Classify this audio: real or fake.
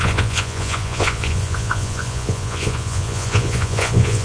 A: fake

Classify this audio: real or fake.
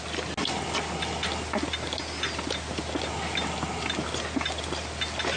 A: real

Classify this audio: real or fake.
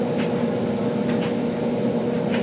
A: real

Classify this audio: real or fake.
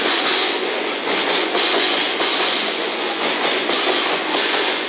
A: fake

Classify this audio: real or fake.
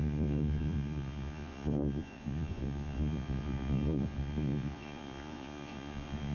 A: fake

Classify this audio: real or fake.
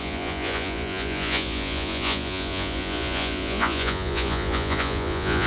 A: fake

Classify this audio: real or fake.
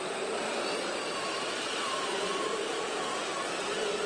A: real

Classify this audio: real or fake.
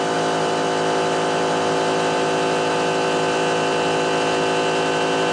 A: real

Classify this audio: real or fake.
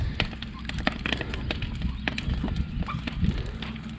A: real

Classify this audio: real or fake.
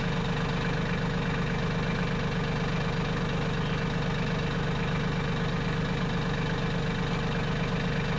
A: real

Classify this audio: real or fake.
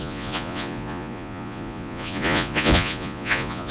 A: fake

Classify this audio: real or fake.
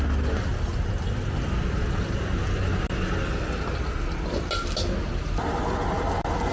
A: real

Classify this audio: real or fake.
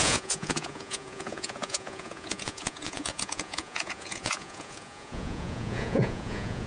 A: fake